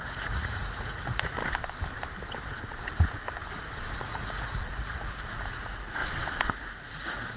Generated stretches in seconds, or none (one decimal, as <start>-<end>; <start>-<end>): 0.0-1.4; 4.0-6.0; 6.5-7.4